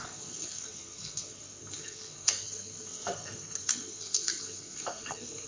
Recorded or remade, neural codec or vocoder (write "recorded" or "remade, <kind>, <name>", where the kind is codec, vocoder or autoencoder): remade, codec, SNAC